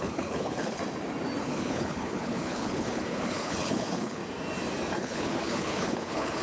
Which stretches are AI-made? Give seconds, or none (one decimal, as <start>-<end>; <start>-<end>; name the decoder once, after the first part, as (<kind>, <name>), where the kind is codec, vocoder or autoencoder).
0.0-0.8 (codec, HILCodec); 1.4-4.2; 5.0-6.4